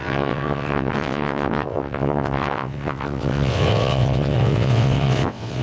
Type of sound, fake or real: fake